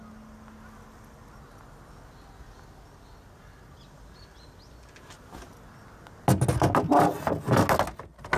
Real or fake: real